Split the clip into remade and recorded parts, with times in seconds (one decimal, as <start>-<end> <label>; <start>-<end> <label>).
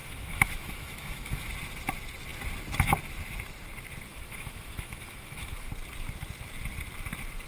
0.0-1.5 remade; 1.5-4.1 recorded; 4.1-5.7 remade; 5.7-7.5 recorded